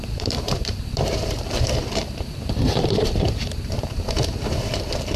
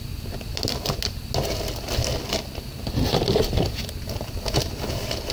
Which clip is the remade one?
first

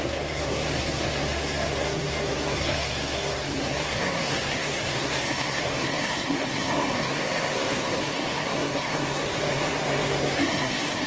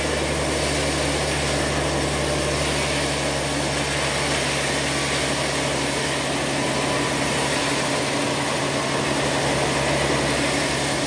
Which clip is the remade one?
first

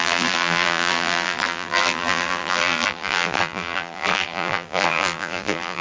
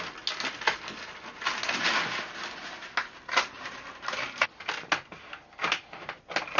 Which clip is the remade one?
first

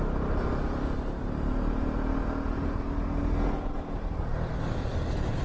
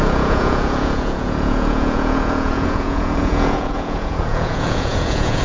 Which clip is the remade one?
second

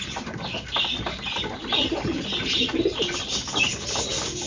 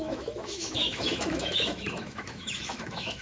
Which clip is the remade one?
second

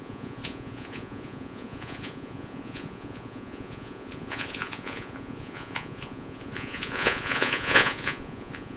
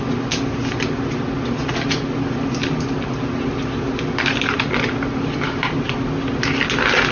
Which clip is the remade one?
first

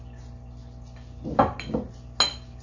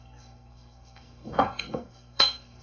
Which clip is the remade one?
second